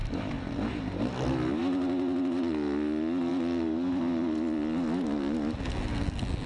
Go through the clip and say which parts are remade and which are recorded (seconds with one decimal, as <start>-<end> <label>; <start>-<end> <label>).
0.0-6.5 recorded